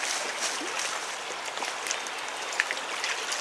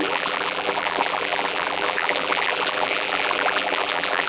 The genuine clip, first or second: first